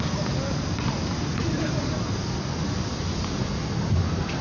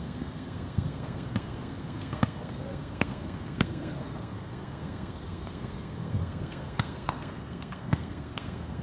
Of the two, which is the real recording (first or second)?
first